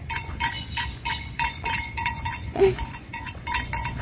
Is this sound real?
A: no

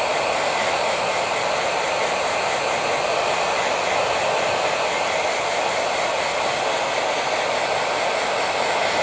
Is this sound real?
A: yes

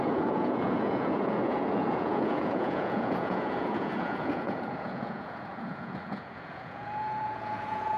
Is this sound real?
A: no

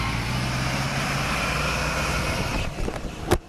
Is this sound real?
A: yes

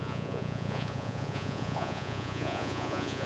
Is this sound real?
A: no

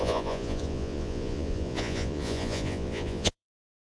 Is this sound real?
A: no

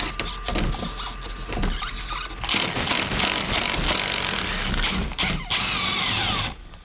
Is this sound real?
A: yes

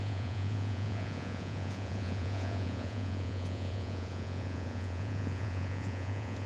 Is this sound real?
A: no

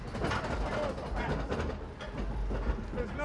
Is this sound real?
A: yes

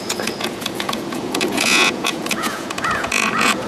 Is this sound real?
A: no